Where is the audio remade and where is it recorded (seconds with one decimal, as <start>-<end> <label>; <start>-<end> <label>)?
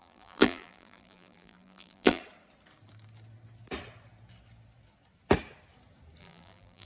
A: 0.0-2.2 remade; 2.2-6.2 recorded; 6.2-6.8 remade